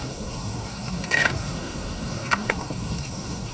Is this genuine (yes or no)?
no